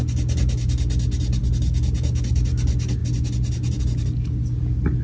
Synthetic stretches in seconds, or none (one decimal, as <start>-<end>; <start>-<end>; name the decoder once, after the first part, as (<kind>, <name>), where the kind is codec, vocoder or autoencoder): none